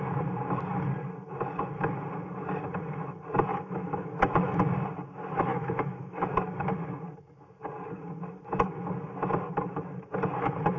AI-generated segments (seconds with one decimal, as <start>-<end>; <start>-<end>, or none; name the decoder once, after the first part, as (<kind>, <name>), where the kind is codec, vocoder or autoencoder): 3.5-4.6 (autoencoder, DAC-VAE); 5.5-6.3

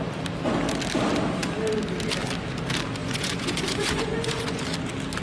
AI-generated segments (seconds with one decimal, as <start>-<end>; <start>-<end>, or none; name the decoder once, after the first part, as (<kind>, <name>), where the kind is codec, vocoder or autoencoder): 3.0-4.6 (vocoder, Vocos)

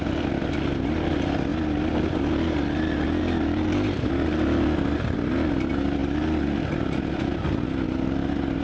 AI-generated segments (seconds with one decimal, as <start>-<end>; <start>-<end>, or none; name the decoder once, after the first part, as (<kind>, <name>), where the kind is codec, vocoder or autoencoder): none

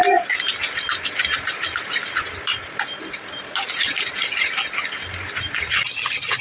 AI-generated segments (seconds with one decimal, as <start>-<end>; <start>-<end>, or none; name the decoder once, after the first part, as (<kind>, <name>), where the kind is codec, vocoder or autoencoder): none